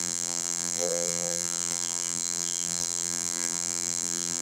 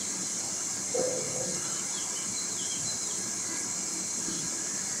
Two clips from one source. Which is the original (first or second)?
second